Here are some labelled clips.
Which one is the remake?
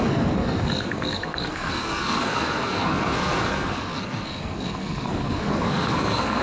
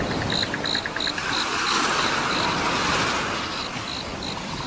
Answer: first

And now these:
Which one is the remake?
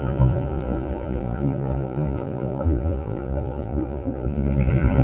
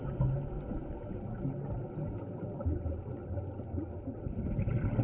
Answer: first